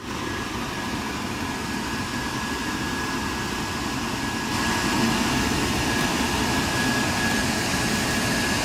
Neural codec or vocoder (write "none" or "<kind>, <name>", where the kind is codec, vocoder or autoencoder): none